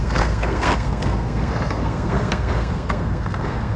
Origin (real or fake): fake